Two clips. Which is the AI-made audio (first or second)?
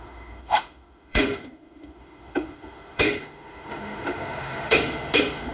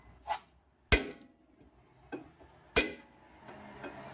first